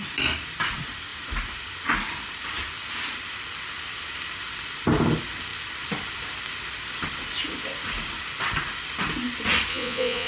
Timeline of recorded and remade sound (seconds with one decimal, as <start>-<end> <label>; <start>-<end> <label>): 0.0-9.7 recorded; 9.7-10.3 remade